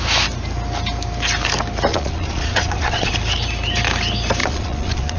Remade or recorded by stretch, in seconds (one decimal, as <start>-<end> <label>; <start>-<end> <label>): 0.0-1.9 recorded; 1.9-3.1 remade; 3.1-4.4 recorded; 4.4-5.2 remade